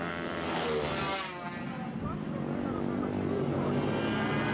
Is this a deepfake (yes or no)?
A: no